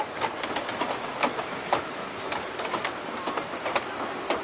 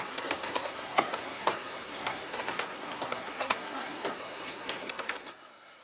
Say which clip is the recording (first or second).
first